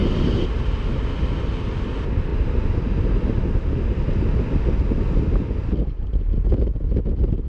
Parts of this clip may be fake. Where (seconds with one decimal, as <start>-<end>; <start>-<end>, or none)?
0.0-0.9